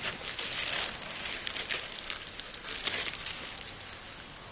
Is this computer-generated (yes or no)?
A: no